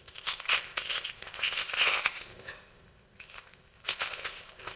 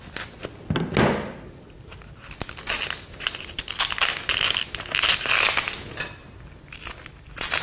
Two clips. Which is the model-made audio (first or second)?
first